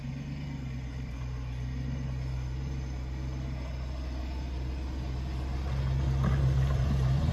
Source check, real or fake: real